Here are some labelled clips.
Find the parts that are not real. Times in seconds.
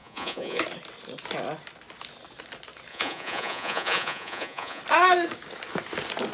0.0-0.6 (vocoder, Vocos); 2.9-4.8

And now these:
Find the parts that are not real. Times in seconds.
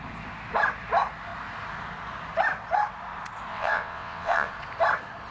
3.5-4.5 (vocoder, WaveNeXt)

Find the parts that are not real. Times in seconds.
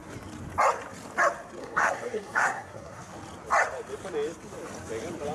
1.6-3.0 (codec, SNAC)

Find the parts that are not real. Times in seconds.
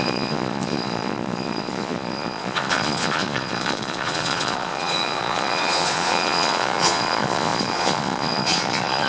0.0-9.1 (vocoder, Vocos)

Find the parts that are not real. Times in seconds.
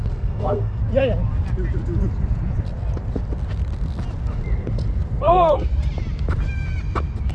0.0-0.8 (codec, SNAC); 5.2-5.7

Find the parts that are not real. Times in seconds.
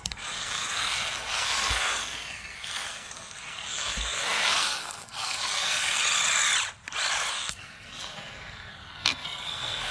0.0-6.0 (codec, SNAC); 7.3-9.9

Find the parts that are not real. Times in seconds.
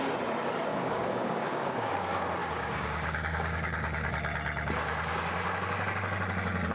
0.7-1.9 (codec, DAC); 2.4-4.1